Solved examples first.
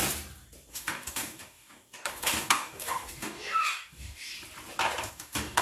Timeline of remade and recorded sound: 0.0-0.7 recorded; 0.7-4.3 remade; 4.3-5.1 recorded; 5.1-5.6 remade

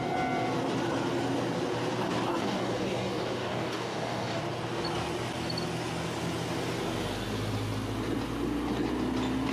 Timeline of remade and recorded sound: 0.0-2.3 recorded; 2.3-4.4 remade; 4.4-9.5 recorded

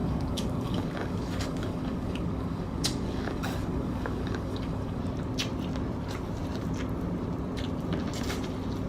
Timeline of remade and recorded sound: 0.0-5.0 remade; 5.0-8.9 recorded

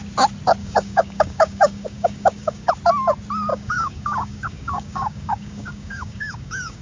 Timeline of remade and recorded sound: 0.0-0.6 recorded; 0.6-2.7 remade; 2.7-3.5 recorded; 3.5-6.8 remade

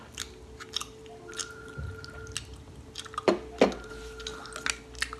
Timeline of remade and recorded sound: 0.0-5.2 recorded

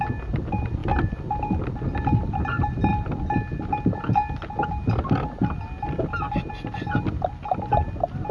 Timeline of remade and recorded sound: 0.0-8.3 recorded

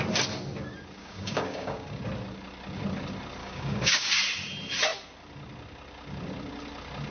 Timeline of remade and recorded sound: 0.0-1.0 recorded; 1.0-2.0 remade; 2.0-3.4 recorded; 3.4-4.2 remade; 4.2-7.1 recorded